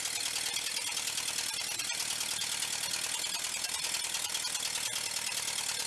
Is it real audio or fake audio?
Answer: real